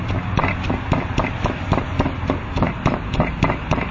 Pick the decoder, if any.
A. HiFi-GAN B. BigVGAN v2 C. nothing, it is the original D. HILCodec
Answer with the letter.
C